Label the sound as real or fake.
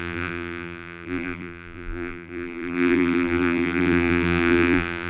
fake